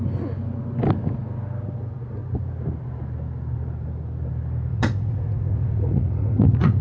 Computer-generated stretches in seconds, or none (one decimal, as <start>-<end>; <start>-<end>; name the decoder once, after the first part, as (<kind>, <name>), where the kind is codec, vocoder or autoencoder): 4.7-6.8 (vocoder, Vocos)